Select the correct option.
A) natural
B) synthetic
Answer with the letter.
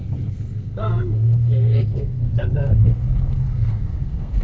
B